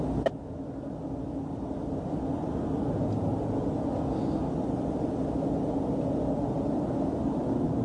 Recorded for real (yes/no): yes